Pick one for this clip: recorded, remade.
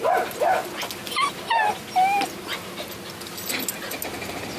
recorded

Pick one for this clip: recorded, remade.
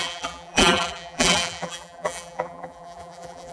remade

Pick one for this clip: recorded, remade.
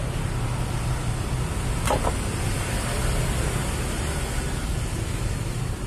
recorded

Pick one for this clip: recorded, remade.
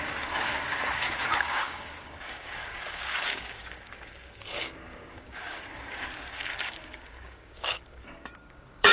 remade